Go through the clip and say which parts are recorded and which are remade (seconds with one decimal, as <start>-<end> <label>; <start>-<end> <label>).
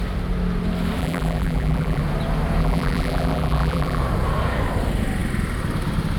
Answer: 0.0-1.0 recorded; 1.0-2.0 remade; 2.0-2.6 recorded; 2.6-4.0 remade; 4.0-6.2 recorded